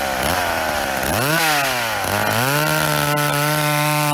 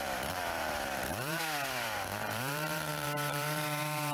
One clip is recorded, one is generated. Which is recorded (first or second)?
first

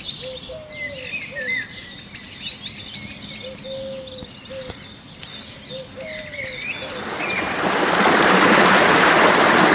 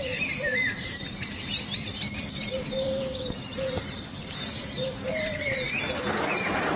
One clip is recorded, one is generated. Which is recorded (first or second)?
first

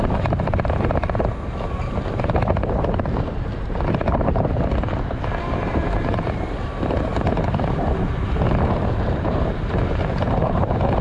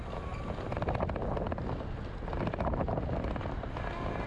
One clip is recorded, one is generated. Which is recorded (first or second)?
second